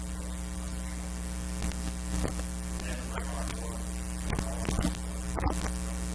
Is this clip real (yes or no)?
yes